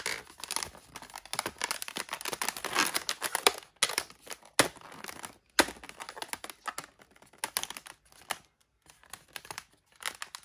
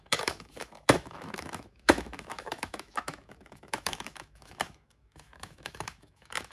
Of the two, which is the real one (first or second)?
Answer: first